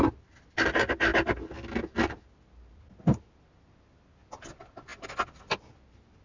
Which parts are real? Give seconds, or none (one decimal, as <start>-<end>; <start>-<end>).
0.0-6.2